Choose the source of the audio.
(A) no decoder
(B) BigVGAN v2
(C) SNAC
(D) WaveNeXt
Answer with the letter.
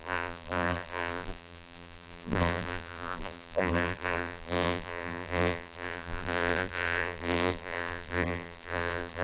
B